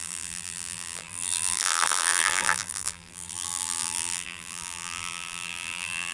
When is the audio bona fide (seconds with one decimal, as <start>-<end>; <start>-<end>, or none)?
none